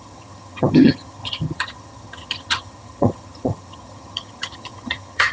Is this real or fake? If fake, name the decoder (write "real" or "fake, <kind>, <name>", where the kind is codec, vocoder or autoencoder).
fake, vocoder, HiFi-GAN